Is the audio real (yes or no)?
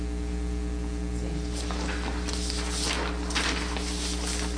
yes